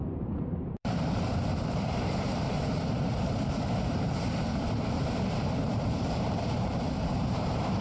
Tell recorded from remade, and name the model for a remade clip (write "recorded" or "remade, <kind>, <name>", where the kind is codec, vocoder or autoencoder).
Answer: remade, vocoder, BigVGAN v2